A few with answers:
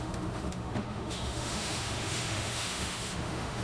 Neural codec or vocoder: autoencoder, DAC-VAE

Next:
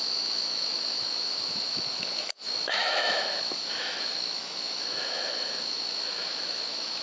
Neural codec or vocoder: autoencoder, DAC-VAE